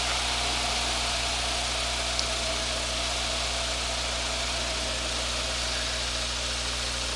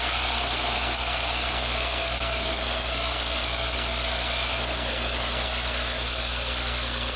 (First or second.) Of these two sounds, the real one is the first